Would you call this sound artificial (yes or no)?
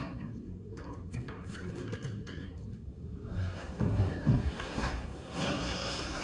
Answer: yes